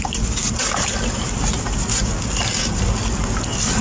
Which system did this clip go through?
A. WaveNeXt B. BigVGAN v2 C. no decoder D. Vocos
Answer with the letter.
C